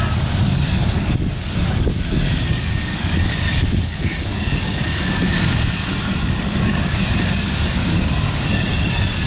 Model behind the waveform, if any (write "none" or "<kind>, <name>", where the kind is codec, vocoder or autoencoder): codec, DAC